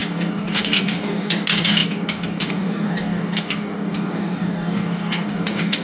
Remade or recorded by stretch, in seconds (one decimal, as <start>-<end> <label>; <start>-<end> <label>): 0.0-5.8 remade